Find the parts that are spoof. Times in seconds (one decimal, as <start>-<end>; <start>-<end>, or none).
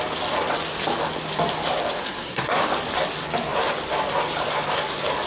2.0-2.6